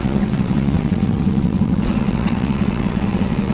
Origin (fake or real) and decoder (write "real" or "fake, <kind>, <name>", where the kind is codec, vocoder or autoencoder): fake, vocoder, WaveNeXt